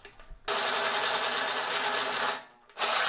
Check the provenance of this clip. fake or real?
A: real